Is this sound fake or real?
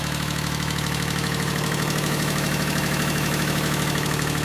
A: fake